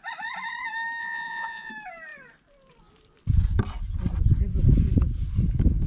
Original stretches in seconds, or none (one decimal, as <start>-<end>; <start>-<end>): 0.0-1.0; 1.7-5.9